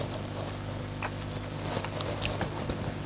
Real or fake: real